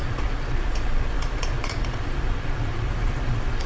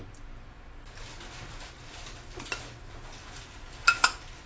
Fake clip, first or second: first